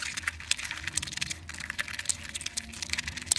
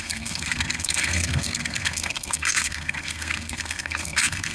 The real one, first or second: first